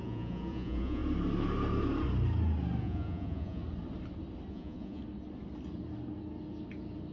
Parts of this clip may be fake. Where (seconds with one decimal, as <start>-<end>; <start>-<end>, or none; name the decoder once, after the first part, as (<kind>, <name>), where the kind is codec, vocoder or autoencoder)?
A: 0.0-1.0 (vocoder, Vocos); 2.8-3.6; 4.5-5.0